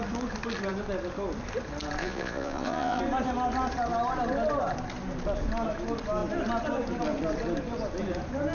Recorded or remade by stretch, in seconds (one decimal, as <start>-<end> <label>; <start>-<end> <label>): 0.0-2.0 recorded; 2.0-3.0 remade; 3.0-8.5 recorded